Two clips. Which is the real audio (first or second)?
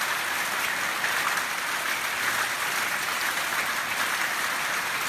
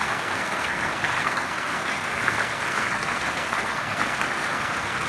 first